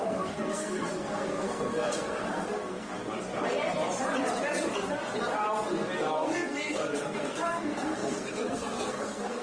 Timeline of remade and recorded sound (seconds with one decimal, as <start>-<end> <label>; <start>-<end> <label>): 0.0-2.9 remade; 2.9-6.1 recorded; 6.1-9.4 remade